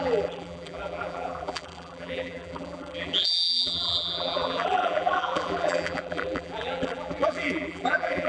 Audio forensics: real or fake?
fake